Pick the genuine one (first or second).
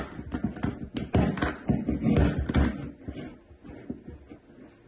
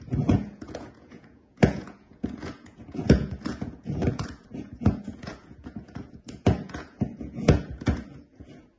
first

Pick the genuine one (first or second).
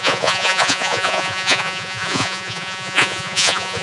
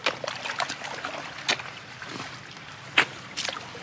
second